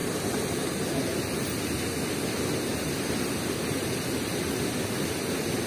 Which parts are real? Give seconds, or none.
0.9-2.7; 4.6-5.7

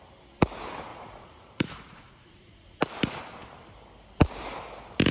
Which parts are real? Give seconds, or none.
0.0-0.9; 2.8-5.1

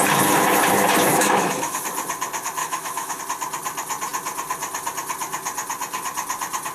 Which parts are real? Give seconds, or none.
0.0-1.1; 1.8-2.6; 3.2-6.7